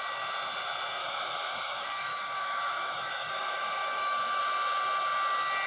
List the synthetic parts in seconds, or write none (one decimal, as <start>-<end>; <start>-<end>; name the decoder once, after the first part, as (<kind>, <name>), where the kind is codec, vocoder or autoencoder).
1.0-4.4 (autoencoder, DAC-VAE)